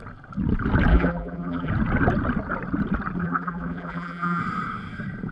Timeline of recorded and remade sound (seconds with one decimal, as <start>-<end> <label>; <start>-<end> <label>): 0.0-0.9 recorded; 0.9-1.7 remade; 1.7-3.2 recorded; 3.2-4.4 remade; 4.4-5.3 recorded